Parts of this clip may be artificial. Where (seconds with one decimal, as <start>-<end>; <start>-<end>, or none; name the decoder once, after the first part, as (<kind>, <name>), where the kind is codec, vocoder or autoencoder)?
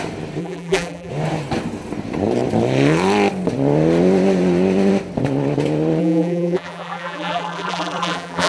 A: 0.4-1.1 (vocoder, BigVGAN v2); 6.0-8.5